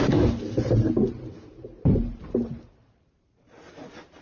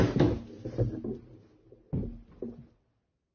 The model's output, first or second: first